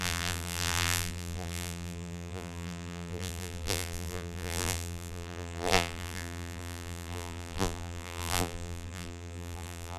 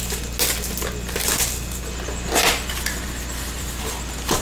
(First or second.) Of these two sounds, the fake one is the first